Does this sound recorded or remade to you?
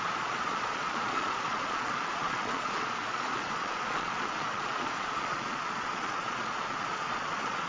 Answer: remade